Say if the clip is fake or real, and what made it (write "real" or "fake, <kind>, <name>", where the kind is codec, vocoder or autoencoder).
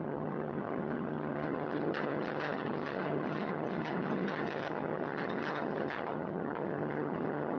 fake, vocoder, HiFi-GAN